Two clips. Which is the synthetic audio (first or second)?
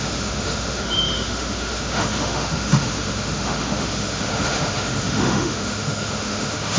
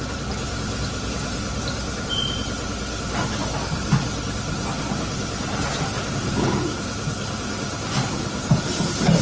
first